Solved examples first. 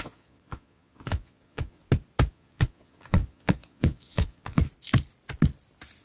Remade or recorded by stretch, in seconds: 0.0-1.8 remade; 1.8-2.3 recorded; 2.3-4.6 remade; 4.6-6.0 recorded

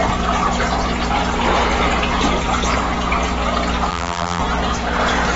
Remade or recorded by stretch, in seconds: 0.0-3.9 recorded; 3.9-4.4 remade; 4.4-5.4 recorded

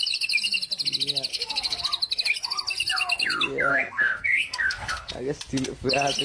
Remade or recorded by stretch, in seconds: 0.0-1.3 recorded; 1.3-1.8 remade; 1.8-3.7 recorded; 3.7-5.1 remade; 5.1-6.2 recorded

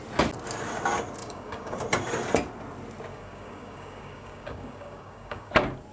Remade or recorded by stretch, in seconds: 0.0-1.2 recorded; 1.2-1.8 remade; 1.8-3.1 recorded; 3.1-5.5 remade; 5.5-5.9 recorded

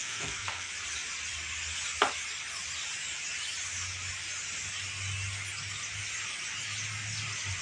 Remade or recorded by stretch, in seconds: 0.0-0.7 remade; 0.7-7.6 recorded

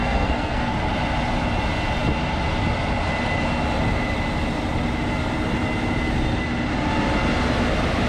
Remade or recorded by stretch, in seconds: 0.0-0.7 remade; 0.7-8.1 recorded

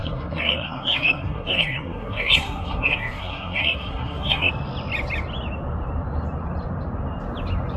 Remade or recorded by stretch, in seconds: 0.0-4.5 remade; 4.5-7.8 recorded

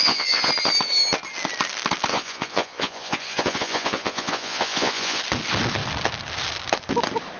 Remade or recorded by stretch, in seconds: 0.0-0.5 remade; 0.5-2.1 recorded; 2.1-5.2 remade; 5.2-7.4 recorded